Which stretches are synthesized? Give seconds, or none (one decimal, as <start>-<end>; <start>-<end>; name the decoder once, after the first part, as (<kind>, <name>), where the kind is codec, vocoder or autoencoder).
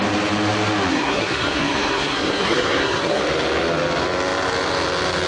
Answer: 0.9-3.2 (codec, SNAC)